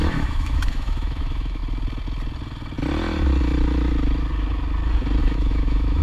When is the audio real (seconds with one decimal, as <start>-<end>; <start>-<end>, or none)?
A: 1.6-5.2